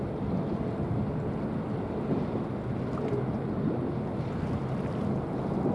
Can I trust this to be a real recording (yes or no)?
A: yes